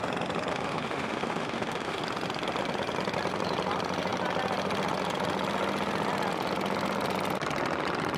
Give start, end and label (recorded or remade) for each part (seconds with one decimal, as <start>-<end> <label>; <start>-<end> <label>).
0.0-0.5 recorded; 0.5-2.0 remade; 2.0-8.2 recorded